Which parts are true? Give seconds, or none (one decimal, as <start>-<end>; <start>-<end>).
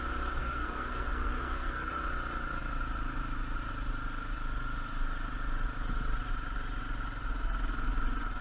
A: 0.0-0.4; 1.9-8.4